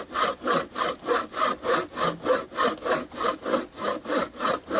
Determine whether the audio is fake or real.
real